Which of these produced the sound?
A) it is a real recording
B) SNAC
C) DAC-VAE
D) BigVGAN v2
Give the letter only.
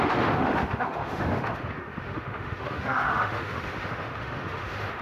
C